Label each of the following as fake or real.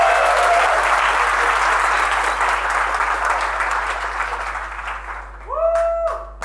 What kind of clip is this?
real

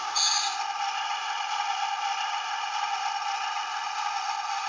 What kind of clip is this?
real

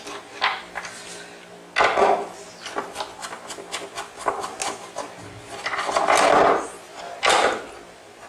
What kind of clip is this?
real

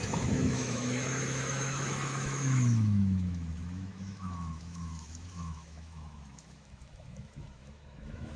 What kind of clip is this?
fake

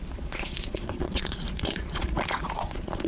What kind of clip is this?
fake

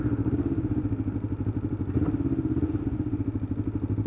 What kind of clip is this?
real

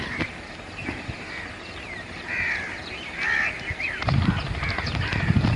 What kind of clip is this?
real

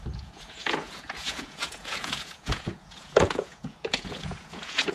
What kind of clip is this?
fake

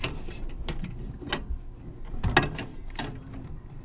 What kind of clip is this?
real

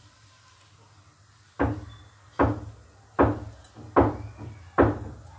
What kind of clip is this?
real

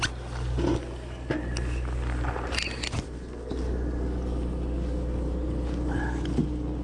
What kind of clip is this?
real